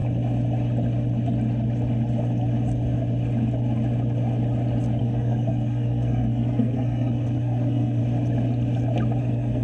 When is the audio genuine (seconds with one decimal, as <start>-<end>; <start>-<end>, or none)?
0.0-5.0; 8.0-9.2